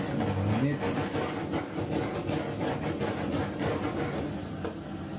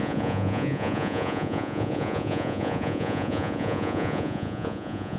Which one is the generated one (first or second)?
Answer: second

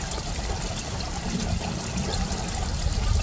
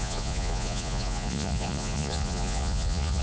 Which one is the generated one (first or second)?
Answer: second